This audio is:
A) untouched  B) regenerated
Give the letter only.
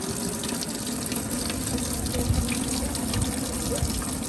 A